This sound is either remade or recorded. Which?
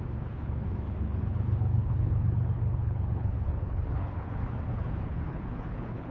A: remade